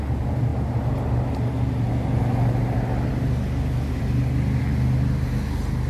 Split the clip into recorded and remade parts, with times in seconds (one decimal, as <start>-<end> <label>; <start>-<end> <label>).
0.0-5.9 recorded